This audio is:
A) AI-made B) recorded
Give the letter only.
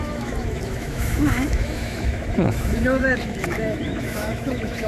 A